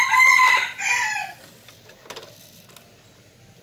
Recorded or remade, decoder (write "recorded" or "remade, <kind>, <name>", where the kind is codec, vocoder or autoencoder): recorded